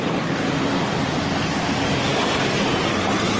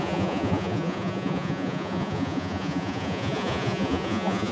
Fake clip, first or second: second